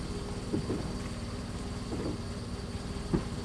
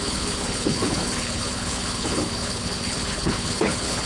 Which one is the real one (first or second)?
first